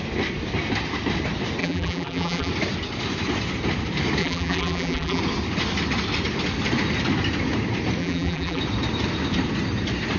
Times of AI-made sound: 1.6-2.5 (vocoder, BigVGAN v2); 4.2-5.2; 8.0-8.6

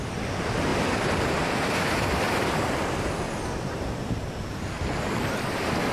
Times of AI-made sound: 0.7-2.7 (vocoder, BigVGAN v2)

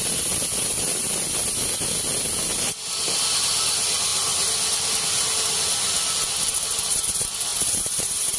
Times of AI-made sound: 7.5-8.4 (vocoder, BigVGAN v2)

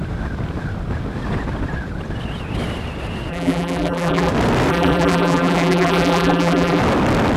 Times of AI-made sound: 3.3-4.3 (vocoder, BigVGAN v2); 4.7-6.8

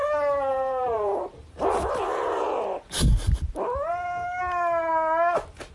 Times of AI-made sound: 0.5-3.9 (vocoder, BigVGAN v2)

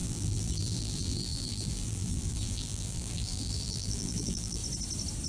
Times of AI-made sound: 0.0-4.6 (vocoder, BigVGAN v2)

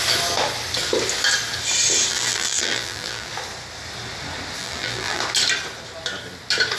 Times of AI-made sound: 2.1-3.3 (vocoder, BigVGAN v2); 4.6-5.2